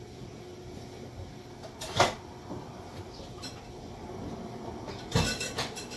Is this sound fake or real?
real